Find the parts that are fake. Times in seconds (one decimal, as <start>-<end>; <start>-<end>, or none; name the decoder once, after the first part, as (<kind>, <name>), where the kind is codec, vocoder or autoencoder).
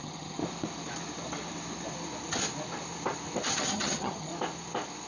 0.0-0.4 (vocoder, HiFi-GAN); 3.5-4.3